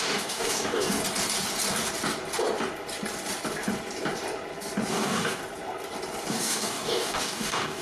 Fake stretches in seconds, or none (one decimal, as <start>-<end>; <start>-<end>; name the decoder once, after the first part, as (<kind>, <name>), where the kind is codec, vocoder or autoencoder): 0.0-1.0 (codec, DAC); 4.9-5.4; 6.3-7.8